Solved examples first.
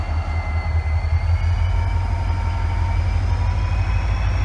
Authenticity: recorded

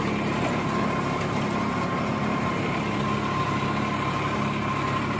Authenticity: recorded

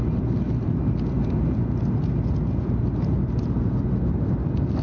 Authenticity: recorded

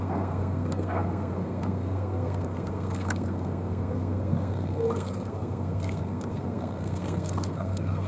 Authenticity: remade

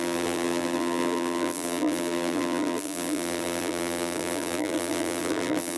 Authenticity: remade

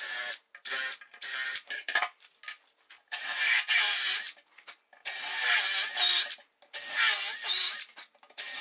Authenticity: recorded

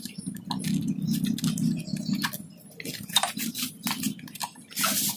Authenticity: recorded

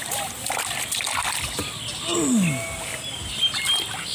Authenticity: recorded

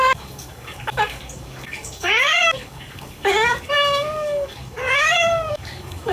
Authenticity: remade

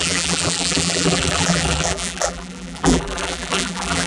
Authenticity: remade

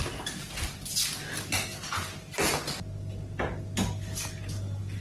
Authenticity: recorded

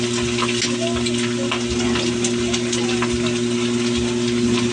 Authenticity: recorded